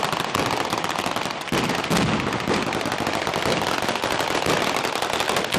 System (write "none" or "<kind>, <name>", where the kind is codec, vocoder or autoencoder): none